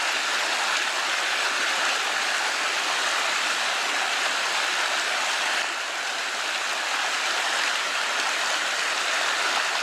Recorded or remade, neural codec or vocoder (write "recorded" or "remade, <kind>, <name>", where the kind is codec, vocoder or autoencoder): recorded